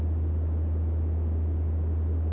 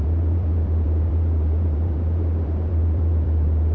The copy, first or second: second